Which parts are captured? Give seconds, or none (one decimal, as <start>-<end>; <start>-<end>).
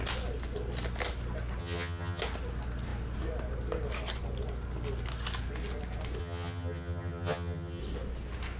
0.0-1.6; 2.2-6.2; 7.8-8.6